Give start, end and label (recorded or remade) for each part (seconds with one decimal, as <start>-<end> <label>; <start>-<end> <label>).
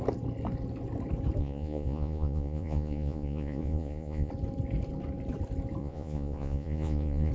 0.0-1.4 recorded; 1.4-4.3 remade; 4.3-5.8 recorded; 5.8-7.3 remade